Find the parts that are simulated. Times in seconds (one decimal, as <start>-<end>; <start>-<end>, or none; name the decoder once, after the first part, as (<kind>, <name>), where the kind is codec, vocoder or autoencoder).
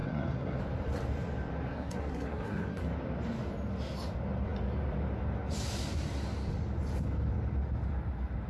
0.0-0.6 (codec, SNAC); 1.7-2.8